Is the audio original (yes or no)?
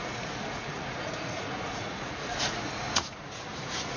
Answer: no